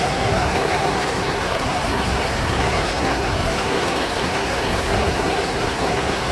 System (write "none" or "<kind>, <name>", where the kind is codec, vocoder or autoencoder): codec, SNAC